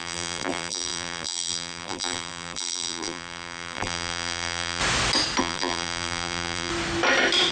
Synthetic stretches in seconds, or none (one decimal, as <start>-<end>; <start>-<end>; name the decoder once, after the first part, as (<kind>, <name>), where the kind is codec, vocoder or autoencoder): 0.0-4.8 (vocoder, BigVGAN v2); 5.4-6.7